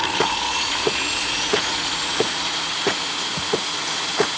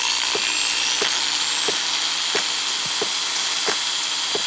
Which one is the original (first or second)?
second